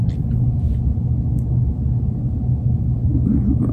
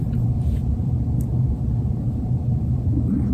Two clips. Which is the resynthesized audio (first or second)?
second